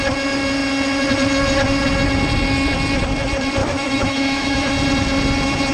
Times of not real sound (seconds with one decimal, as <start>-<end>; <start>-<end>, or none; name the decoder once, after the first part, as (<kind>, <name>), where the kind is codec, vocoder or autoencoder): 3.6-4.7 (autoencoder, DAC-VAE)